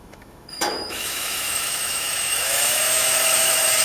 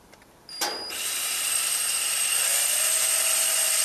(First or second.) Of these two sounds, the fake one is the first